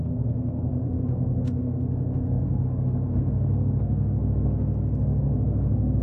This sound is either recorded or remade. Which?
remade